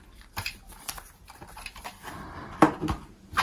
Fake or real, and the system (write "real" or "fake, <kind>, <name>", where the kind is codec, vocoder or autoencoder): real